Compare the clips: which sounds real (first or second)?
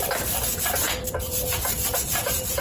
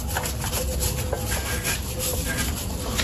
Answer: second